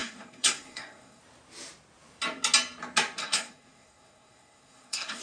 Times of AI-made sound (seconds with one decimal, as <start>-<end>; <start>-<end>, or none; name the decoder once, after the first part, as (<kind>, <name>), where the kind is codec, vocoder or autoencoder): 0.0-1.2 (codec, SNAC); 3.2-5.2